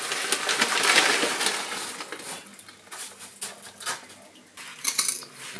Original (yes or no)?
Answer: yes